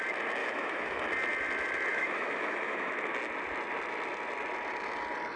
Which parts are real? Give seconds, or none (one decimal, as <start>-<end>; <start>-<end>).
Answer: 0.0-0.4; 1.0-1.9; 2.9-5.4